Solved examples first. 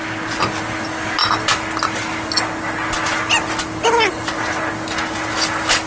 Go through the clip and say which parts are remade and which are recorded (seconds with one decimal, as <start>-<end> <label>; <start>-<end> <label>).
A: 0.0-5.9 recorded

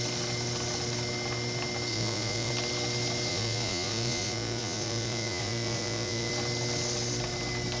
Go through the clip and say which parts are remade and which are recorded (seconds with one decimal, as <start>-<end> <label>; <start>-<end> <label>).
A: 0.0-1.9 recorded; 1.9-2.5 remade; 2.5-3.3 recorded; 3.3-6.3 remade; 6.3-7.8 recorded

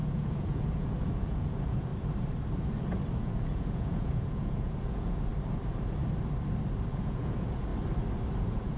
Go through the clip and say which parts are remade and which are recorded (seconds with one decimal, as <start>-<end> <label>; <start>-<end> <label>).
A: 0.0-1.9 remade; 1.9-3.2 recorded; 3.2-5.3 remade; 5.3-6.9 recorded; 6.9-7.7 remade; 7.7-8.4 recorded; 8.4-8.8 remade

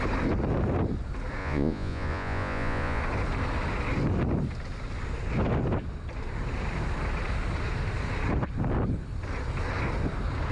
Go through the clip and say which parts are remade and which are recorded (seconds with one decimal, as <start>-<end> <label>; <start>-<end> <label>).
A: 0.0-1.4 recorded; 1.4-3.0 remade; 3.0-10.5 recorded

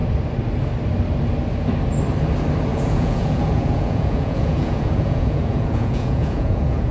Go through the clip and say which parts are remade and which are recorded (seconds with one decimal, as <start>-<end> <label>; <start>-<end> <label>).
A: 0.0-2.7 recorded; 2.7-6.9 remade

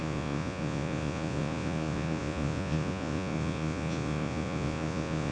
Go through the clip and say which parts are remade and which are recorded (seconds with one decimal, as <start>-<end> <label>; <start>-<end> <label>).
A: 0.0-5.3 remade

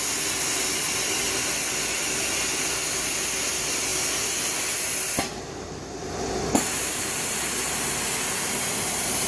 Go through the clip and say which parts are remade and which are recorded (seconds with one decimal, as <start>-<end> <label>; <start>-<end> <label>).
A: 0.0-9.3 recorded